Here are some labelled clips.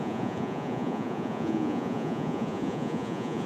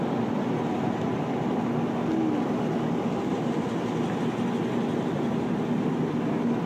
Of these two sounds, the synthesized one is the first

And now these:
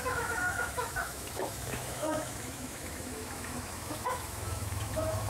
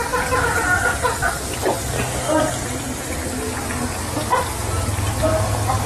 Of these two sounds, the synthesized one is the first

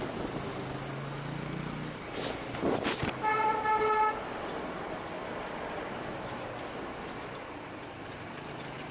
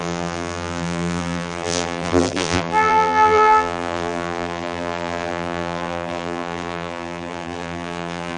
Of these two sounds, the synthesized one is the second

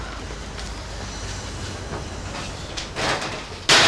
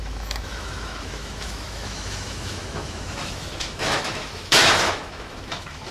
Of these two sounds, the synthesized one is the second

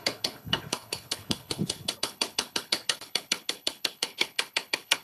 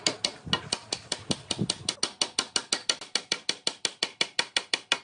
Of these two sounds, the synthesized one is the first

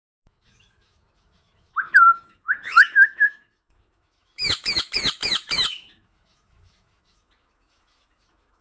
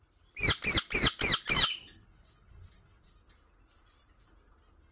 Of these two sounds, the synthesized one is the first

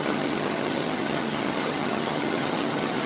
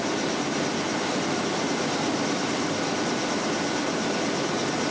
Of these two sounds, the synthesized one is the first